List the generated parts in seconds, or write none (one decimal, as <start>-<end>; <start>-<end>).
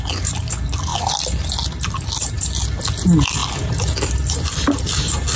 0.9-2.3; 3.4-5.0